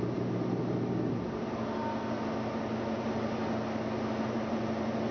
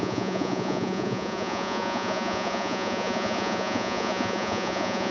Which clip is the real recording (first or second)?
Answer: first